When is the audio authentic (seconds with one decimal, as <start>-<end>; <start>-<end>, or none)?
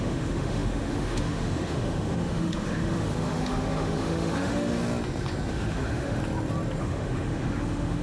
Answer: 4.8-5.5; 6.2-6.8